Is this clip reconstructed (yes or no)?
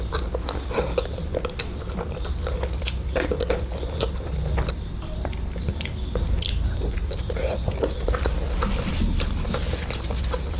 no